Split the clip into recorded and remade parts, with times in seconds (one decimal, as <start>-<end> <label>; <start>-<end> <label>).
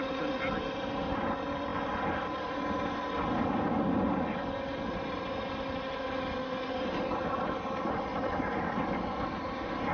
0.0-9.9 recorded